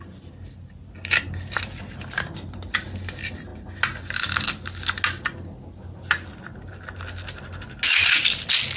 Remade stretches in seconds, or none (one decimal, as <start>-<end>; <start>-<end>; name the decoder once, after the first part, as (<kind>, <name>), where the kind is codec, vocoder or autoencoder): none